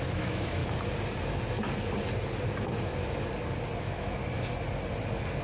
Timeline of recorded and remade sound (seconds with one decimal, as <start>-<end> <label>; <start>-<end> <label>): 0.0-0.6 remade; 0.6-3.8 recorded; 3.8-4.2 remade; 4.2-5.4 recorded

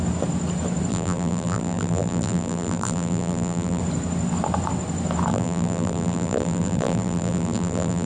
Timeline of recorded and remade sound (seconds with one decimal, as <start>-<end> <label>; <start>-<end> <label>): 0.0-0.9 recorded; 0.9-3.8 remade; 3.8-5.3 recorded; 5.3-8.1 remade